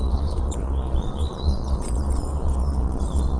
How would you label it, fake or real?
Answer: fake